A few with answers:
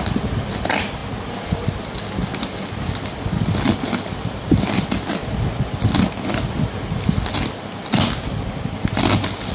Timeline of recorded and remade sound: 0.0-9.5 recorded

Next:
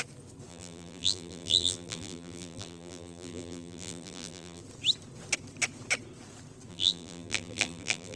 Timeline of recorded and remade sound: 0.0-0.5 recorded; 0.5-4.6 remade; 4.6-6.7 recorded; 6.7-8.2 remade

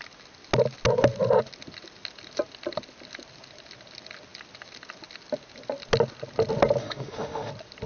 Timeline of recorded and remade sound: 0.0-6.8 recorded; 6.8-7.5 remade; 7.5-7.9 recorded

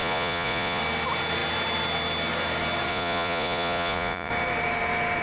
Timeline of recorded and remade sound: 0.0-0.8 remade; 0.8-2.9 recorded; 2.9-4.3 remade; 4.3-5.2 recorded

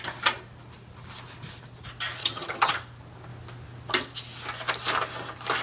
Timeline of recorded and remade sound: 0.0-2.2 recorded; 2.2-2.7 remade; 2.7-5.6 recorded

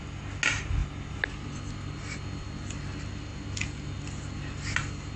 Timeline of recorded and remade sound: 0.0-5.2 recorded

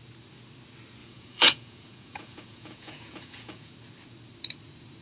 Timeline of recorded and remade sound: 0.0-1.0 recorded; 1.0-3.7 remade; 3.7-5.0 recorded